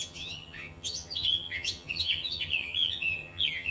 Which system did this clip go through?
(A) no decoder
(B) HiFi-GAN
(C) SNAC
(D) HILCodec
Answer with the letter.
B